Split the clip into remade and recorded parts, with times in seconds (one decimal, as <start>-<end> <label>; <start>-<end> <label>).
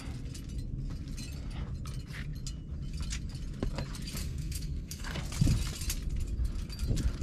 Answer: 0.0-4.2 recorded; 4.2-5.2 remade; 5.2-7.2 recorded